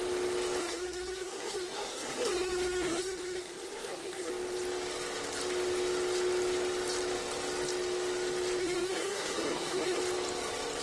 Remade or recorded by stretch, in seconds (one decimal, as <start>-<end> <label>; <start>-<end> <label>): 0.0-0.6 recorded; 0.6-4.3 remade; 4.3-8.6 recorded; 8.6-10.0 remade; 10.0-10.8 recorded